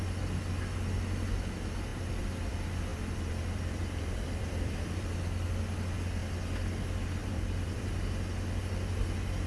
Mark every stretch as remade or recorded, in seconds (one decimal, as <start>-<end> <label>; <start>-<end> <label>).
0.0-1.9 recorded; 1.9-2.5 remade; 2.5-2.9 recorded; 2.9-5.1 remade; 5.1-7.2 recorded; 7.2-8.6 remade; 8.6-9.5 recorded

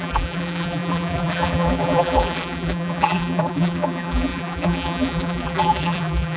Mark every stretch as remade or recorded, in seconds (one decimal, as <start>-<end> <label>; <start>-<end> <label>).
0.0-6.4 remade